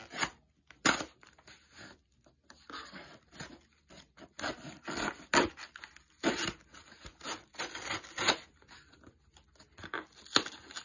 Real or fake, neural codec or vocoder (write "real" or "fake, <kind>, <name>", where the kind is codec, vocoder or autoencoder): real